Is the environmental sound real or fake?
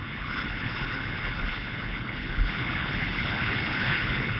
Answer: fake